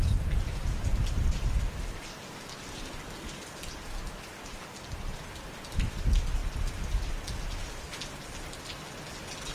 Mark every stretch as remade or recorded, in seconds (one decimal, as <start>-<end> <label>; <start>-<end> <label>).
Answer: 0.0-9.5 recorded